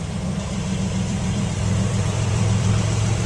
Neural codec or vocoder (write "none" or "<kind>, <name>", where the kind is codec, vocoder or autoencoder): vocoder, BigVGAN v2